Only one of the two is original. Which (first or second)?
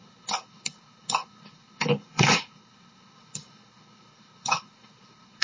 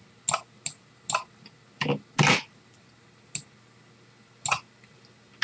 second